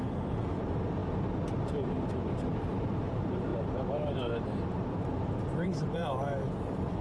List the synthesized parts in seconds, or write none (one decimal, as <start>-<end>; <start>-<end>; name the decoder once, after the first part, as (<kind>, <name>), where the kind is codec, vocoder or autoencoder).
0.0-1.0 (vocoder, BigVGAN v2); 2.6-7.0